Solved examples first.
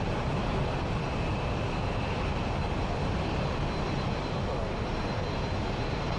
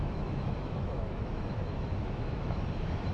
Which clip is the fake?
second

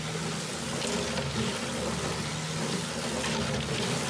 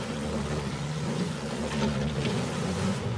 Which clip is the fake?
second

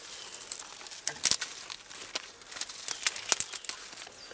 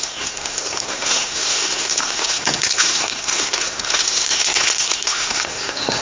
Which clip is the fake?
second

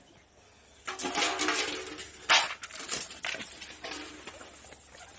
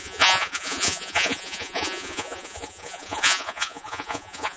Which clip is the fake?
second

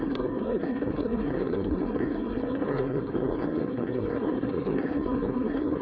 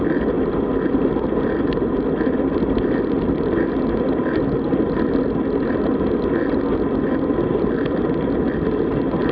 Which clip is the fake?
first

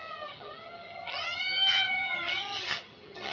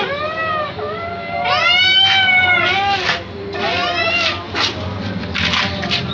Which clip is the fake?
first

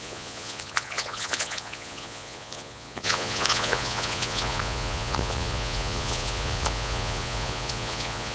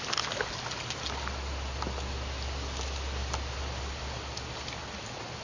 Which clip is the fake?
first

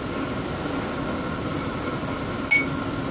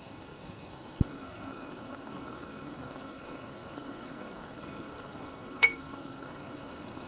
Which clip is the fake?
second